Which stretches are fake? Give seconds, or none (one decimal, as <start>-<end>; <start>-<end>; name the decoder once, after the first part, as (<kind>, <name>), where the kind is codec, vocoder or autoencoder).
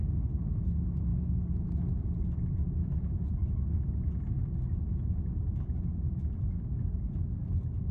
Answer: none